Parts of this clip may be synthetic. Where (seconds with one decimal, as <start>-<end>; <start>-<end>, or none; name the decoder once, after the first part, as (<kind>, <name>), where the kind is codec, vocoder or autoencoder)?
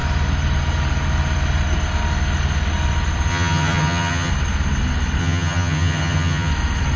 3.3-4.3 (vocoder, HiFi-GAN); 5.2-6.5